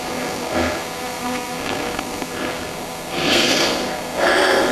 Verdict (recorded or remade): remade